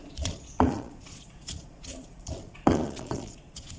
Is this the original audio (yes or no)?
no